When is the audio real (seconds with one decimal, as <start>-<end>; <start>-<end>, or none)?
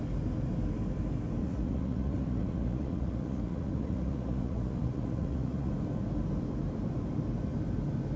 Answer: 0.0-1.4; 5.7-8.2